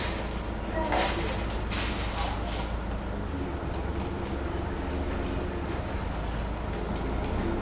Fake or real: real